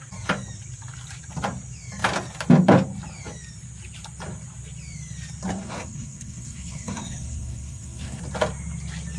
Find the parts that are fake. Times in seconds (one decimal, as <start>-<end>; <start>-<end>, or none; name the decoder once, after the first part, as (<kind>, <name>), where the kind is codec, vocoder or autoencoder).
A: 5.5-8.2 (codec, SNAC)